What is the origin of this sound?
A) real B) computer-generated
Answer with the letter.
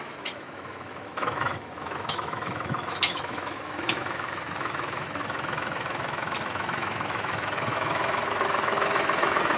B